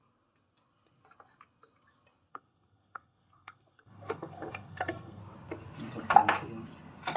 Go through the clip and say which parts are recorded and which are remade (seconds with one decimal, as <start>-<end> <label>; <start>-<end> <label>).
0.0-2.3 recorded; 2.3-5.2 remade; 5.2-7.2 recorded